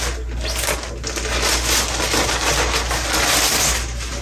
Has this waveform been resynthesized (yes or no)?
no